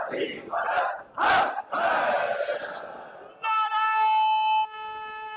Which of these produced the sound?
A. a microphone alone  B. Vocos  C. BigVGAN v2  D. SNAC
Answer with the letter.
A